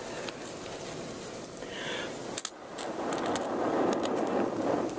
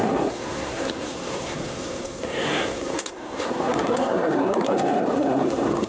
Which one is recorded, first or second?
first